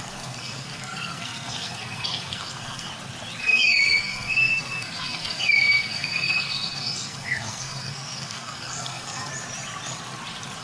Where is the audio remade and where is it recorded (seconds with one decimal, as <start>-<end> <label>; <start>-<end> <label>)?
0.0-2.9 remade; 2.9-3.4 recorded; 3.4-9.3 remade; 9.3-10.6 recorded